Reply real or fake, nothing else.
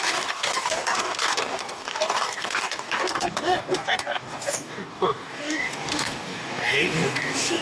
fake